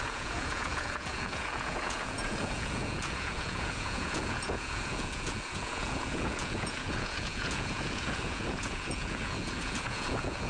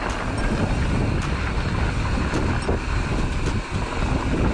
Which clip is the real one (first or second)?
second